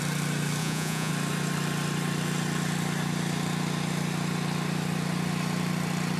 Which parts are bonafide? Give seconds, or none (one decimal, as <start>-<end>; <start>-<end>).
0.0-0.6; 1.1-6.2